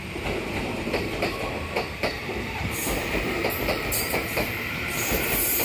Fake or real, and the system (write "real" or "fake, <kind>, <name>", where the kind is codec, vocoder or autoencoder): fake, vocoder, BigVGAN v2